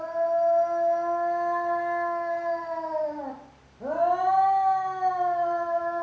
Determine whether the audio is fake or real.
real